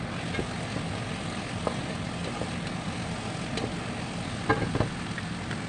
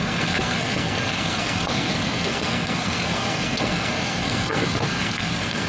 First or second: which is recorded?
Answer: first